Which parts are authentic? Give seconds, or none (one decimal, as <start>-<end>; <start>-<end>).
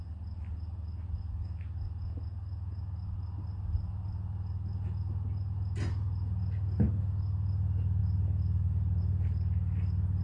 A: 0.0-10.2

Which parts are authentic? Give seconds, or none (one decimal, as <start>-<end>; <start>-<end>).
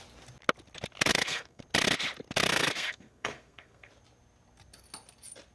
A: 0.0-1.1; 1.6-2.5; 3.9-5.5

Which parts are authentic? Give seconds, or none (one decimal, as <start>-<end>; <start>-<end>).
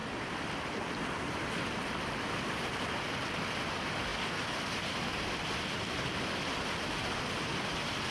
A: 0.0-8.1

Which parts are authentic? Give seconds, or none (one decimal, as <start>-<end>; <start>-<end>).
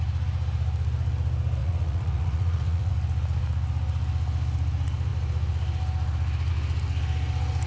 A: 0.0-1.6; 2.9-7.7